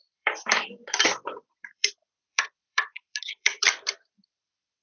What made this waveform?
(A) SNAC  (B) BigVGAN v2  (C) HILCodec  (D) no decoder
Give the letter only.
B